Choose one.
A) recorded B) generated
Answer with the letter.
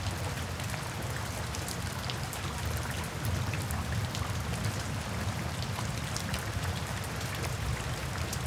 B